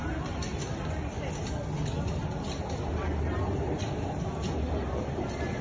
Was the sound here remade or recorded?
recorded